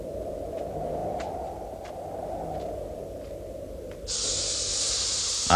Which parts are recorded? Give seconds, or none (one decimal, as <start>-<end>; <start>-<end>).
0.0-1.0; 1.6-5.6

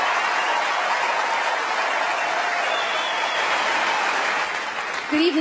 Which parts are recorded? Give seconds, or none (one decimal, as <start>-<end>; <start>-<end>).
0.0-0.4; 3.6-5.4

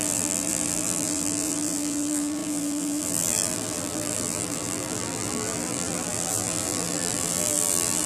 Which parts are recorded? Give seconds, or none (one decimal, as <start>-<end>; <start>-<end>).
none

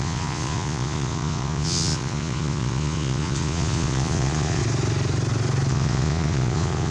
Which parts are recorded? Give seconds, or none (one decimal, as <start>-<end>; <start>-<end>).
4.6-5.7

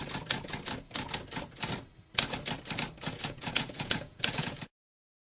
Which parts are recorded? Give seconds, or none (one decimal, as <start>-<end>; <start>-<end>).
0.0-3.1

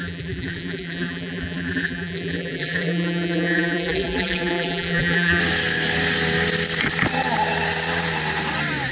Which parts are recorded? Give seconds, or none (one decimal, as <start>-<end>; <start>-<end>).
5.4-8.9